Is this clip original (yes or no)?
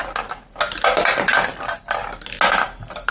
yes